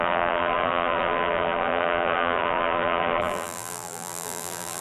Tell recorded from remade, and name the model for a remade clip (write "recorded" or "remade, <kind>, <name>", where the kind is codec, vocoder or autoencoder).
remade, vocoder, BigVGAN v2